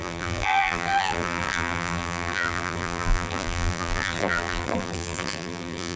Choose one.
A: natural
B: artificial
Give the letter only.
B